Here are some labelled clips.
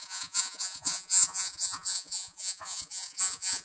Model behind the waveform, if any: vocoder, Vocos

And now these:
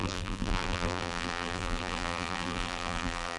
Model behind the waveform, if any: vocoder, BigVGAN v2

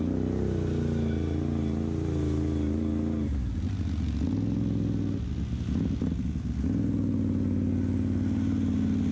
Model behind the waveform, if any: none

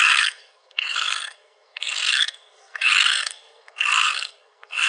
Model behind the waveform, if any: codec, SNAC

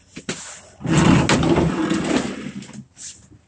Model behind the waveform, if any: none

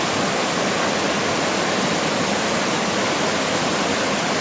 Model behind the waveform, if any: none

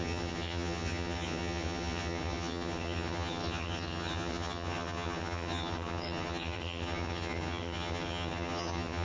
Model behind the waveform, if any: vocoder, HiFi-GAN